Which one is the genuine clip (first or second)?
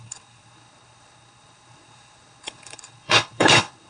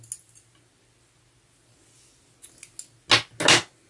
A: second